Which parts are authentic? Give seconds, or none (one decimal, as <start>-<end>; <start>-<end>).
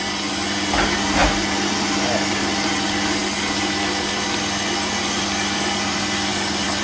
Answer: 0.0-6.3